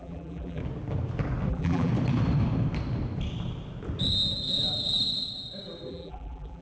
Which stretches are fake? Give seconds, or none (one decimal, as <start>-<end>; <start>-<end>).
0.0-0.6; 1.5-1.9; 5.9-6.6